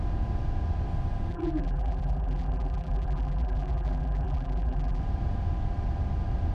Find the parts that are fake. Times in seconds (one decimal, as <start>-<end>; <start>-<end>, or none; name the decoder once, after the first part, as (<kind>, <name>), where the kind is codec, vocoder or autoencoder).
1.3-5.0 (vocoder, BigVGAN v2)